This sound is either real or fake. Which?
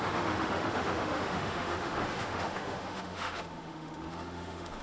fake